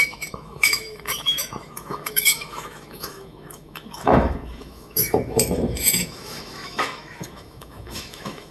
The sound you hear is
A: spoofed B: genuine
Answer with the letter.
A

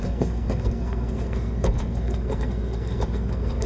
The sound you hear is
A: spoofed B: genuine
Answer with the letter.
A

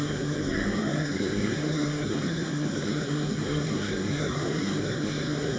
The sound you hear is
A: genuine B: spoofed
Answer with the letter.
B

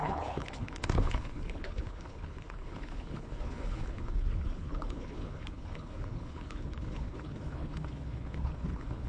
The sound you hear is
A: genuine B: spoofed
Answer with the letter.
B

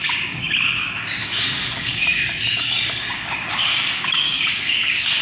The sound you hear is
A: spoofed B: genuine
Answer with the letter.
A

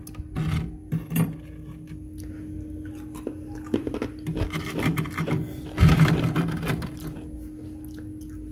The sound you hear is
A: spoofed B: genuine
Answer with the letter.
B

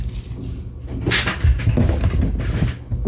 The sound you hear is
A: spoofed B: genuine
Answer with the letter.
B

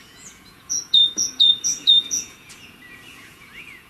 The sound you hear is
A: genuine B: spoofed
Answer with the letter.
B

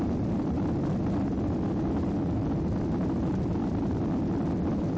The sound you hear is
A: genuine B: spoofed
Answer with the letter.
A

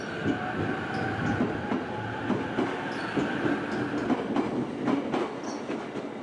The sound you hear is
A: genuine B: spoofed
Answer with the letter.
A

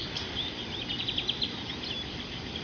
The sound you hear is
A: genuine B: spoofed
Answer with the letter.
A